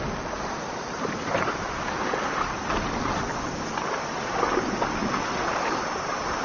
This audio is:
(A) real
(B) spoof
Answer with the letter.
A